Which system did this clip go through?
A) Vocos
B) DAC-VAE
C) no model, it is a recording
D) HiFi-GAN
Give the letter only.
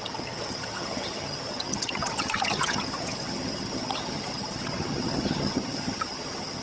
D